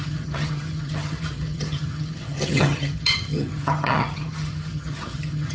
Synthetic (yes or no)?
yes